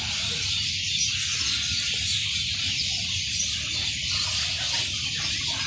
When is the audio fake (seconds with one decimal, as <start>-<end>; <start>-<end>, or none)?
none